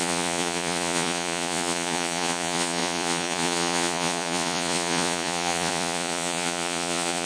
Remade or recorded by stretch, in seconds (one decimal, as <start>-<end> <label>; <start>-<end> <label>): 0.0-7.3 remade